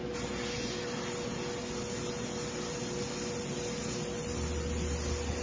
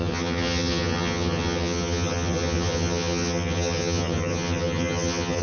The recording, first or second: first